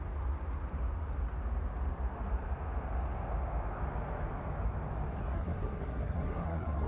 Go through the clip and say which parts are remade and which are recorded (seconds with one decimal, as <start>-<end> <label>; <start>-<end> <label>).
0.0-5.2 recorded; 5.2-6.9 remade